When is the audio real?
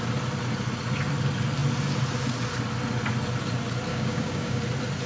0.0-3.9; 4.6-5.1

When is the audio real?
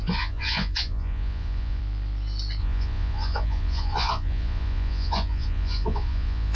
1.8-2.6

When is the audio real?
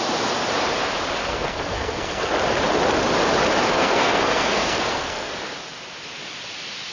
0.0-1.2; 2.3-3.7; 5.3-6.9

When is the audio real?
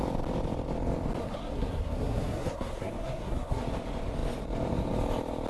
0.0-1.2; 3.6-5.5